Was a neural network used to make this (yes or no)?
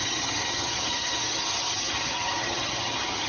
yes